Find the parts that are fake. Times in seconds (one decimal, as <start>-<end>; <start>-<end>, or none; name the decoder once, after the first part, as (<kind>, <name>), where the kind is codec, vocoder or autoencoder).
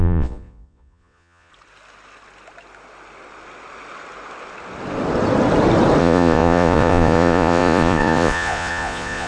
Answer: 0.0-1.5 (vocoder, Vocos); 6.0-9.3